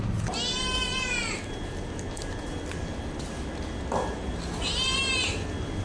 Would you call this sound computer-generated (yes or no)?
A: no